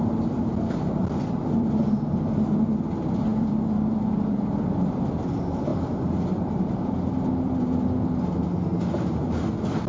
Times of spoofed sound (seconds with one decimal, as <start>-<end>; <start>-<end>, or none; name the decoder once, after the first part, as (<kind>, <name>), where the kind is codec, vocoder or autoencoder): 1.0-2.7 (vocoder, BigVGAN v2); 3.3-5.3; 5.7-8.1